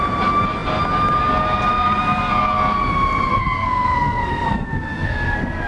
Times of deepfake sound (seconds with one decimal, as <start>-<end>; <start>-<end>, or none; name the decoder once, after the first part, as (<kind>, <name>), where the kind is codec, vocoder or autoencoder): 1.7-2.3 (codec, SNAC); 3.3-5.7